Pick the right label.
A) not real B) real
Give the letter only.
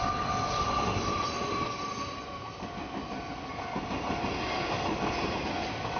B